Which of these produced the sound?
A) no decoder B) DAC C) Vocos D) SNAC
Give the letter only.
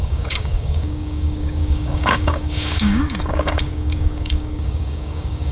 B